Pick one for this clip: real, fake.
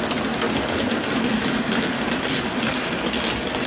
real